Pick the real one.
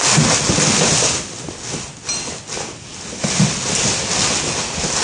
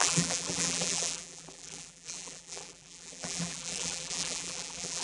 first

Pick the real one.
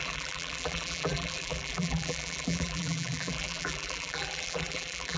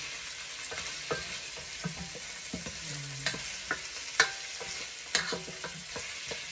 second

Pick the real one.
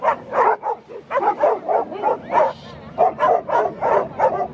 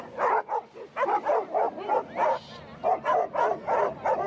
second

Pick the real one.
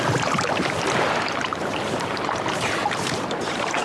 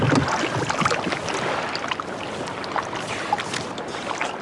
second